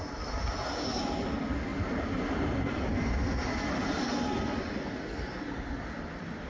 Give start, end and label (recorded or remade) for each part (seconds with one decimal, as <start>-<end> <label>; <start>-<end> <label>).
0.0-6.5 recorded